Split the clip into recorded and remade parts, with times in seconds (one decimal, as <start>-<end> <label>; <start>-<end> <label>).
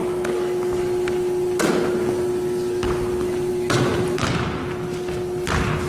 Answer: 0.0-3.9 recorded; 3.9-4.6 remade; 4.6-5.9 recorded